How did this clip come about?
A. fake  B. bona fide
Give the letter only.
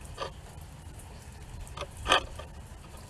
B